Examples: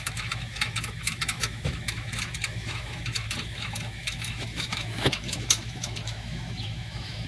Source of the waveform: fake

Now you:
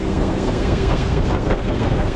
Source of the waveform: fake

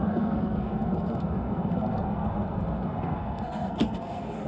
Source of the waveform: fake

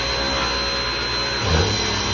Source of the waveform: real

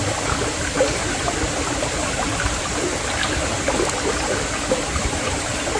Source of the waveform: real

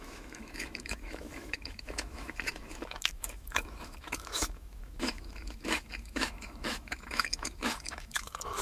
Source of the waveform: fake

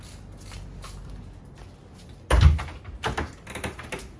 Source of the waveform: real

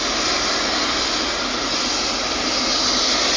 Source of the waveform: real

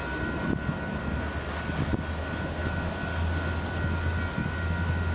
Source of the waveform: real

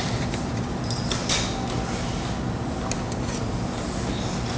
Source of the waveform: real